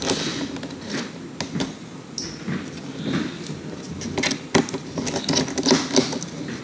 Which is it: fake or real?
real